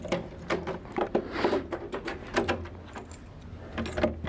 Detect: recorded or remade recorded